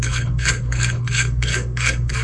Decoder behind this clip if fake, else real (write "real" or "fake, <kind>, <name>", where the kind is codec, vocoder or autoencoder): fake, codec, SNAC